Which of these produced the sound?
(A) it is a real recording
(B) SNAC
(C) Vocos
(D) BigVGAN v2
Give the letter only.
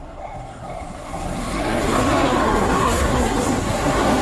B